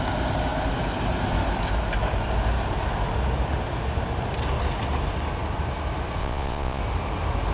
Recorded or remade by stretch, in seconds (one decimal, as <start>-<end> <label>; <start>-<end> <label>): 0.0-6.2 recorded; 6.2-6.8 remade; 6.8-7.5 recorded